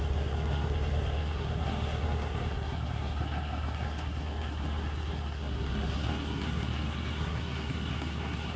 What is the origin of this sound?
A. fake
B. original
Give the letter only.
A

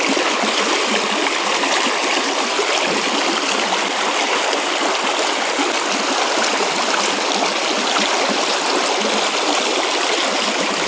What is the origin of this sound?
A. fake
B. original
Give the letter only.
B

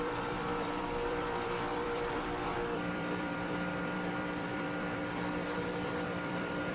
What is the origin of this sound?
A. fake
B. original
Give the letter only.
A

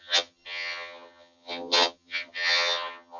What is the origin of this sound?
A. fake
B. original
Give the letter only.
A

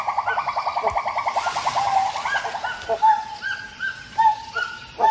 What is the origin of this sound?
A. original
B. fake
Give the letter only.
A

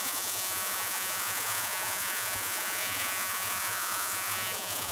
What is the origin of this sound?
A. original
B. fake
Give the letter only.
B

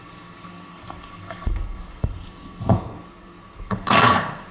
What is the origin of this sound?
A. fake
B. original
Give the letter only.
A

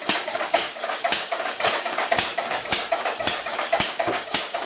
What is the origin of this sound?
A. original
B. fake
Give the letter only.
B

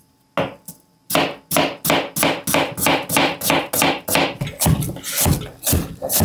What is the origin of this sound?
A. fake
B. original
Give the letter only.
B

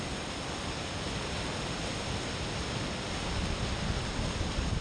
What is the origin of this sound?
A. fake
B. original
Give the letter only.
B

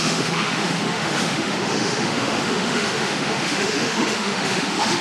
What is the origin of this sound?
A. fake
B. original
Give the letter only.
A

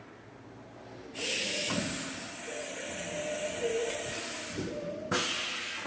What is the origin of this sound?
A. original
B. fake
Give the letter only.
A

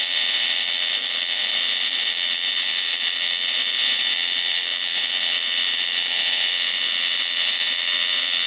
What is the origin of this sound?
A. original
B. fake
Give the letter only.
B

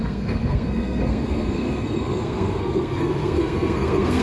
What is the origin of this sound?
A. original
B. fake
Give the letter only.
B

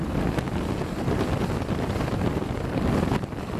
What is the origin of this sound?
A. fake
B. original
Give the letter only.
B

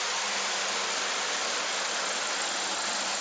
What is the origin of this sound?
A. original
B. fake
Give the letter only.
A